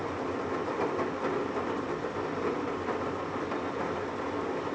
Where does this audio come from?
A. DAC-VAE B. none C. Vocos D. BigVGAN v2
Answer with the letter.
B